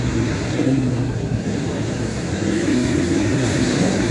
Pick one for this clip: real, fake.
fake